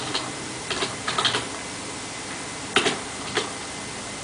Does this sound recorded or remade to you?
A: remade